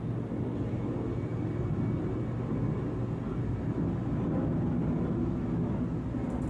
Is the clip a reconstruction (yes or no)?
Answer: no